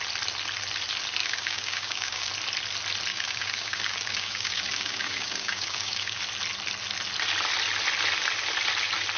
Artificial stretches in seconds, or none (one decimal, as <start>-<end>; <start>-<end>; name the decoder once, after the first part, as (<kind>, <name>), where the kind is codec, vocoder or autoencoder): 1.2-2.3 (codec, DAC); 3.1-6.2